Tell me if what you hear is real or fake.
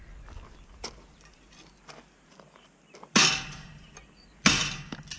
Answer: real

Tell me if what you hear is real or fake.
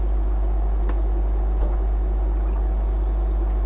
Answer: real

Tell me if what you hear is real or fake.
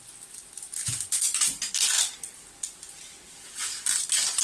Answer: real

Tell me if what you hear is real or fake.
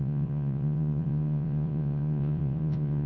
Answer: fake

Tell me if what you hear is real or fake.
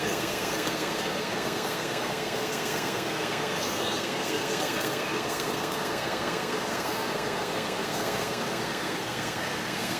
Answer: fake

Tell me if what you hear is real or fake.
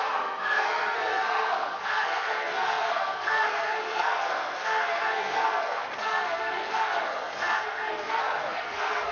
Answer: fake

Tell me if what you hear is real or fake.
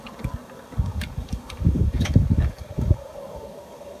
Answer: fake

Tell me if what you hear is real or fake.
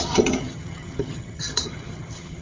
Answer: fake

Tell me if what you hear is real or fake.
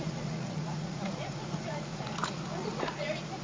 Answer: fake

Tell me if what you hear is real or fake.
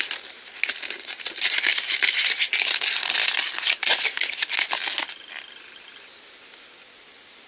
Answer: real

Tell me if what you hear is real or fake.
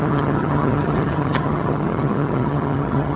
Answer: fake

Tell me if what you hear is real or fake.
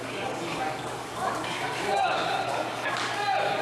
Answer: fake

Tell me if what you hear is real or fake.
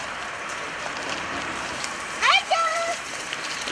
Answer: fake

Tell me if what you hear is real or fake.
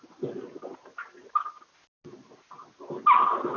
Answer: real